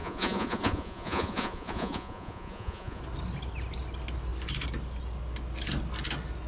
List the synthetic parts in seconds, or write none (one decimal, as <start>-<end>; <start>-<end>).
0.0-3.0